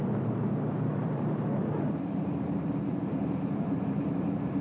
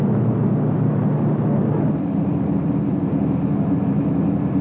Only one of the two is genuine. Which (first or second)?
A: second